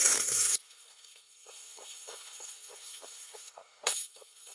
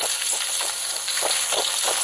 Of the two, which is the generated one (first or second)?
first